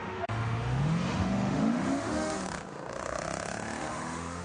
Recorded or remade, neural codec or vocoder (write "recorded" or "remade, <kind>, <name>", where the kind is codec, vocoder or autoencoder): remade, autoencoder, DAC-VAE